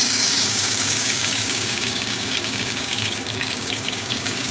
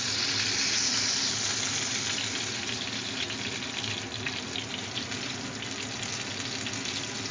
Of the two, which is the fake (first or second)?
first